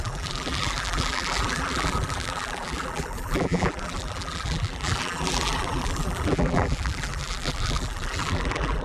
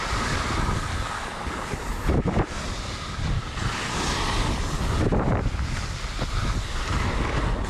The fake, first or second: first